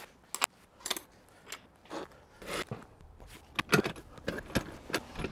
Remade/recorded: recorded